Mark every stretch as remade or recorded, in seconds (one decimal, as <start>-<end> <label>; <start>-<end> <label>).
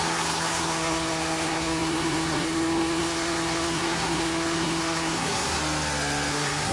0.0-5.6 remade; 5.6-6.3 recorded; 6.3-6.7 remade